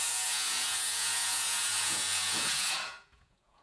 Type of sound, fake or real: fake